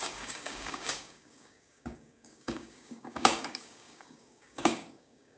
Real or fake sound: fake